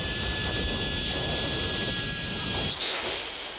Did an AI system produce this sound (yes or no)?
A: no